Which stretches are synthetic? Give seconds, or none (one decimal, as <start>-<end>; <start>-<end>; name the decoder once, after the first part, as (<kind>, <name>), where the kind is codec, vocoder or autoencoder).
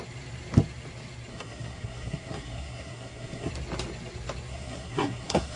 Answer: 1.3-3.5 (codec, SNAC); 4.5-5.6